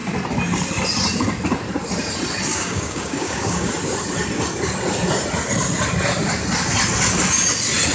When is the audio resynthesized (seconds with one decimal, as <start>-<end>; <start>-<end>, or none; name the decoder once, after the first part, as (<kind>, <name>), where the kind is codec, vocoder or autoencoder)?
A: 2.5-3.7 (codec, DAC)